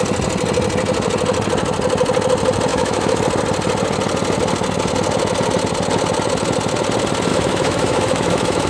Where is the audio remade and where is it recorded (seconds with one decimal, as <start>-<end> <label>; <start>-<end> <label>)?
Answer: 0.0-2.7 recorded; 2.7-3.2 remade; 3.2-7.3 recorded; 7.3-8.7 remade